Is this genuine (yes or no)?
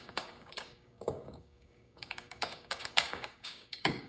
no